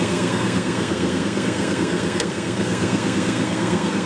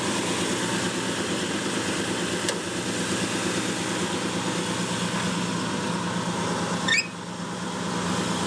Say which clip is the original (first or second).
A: second